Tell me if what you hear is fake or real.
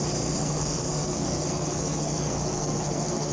fake